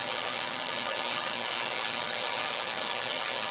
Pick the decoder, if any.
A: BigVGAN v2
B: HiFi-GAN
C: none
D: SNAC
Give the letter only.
B